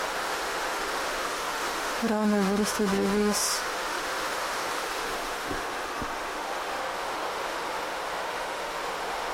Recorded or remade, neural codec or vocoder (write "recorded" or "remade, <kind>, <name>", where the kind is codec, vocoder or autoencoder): remade, autoencoder, DAC-VAE